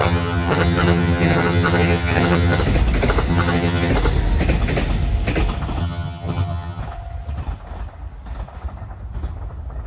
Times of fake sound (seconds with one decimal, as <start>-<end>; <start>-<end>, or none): 0.0-2.6; 3.3-3.9; 5.8-6.8

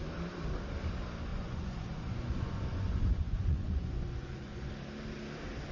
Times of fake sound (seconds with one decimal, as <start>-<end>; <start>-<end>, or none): 1.3-4.7

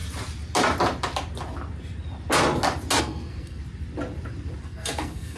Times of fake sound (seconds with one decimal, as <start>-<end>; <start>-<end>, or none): 3.0-3.6; 4.6-5.4

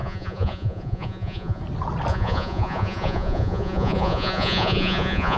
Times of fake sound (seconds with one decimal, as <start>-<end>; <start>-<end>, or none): 0.0-1.6; 2.1-5.4

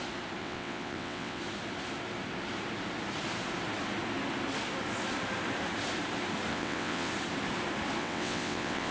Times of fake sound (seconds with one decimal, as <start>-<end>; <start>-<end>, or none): 0.4-1.4; 6.5-7.1; 8.0-8.9